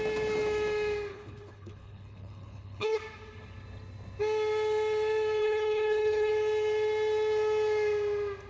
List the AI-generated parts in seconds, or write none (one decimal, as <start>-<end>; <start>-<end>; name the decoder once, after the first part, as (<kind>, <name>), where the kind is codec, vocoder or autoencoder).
1.1-3.0 (codec, HILCodec); 5.4-6.3